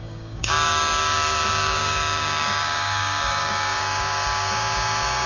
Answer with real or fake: fake